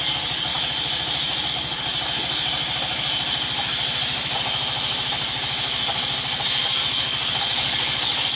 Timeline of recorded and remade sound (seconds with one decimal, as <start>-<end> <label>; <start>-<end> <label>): 0.0-0.5 remade; 0.5-1.5 recorded; 1.5-1.9 remade; 1.9-6.9 recorded; 6.9-8.4 remade